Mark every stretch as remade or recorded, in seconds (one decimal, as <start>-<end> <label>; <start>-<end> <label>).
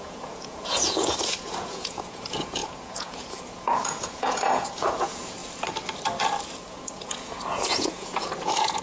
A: 0.0-5.4 remade; 5.4-6.7 recorded; 6.7-8.8 remade